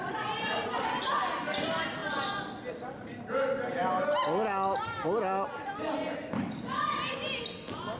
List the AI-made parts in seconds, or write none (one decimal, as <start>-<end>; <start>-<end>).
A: none